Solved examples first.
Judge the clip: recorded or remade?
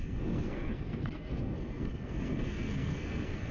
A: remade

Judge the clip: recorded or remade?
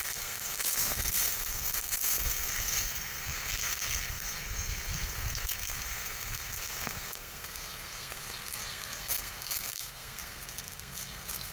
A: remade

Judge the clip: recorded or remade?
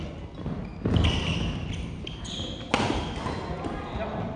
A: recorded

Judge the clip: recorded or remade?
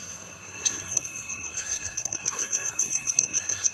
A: remade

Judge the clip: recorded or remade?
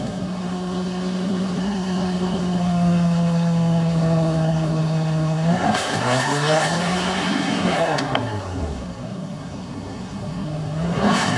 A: remade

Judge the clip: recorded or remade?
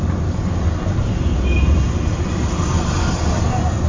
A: recorded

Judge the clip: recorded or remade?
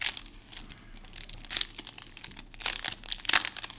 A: recorded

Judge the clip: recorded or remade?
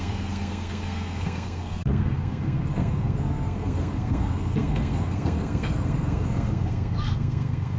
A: remade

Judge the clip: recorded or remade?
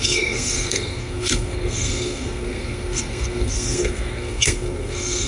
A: remade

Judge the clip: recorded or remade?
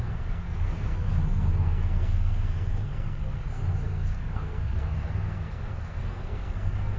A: remade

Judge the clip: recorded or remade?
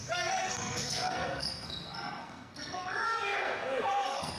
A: remade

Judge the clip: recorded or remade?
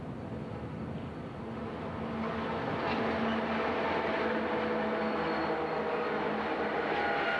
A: recorded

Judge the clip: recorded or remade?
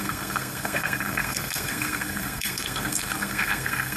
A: remade